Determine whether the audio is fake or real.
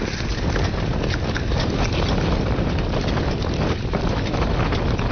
real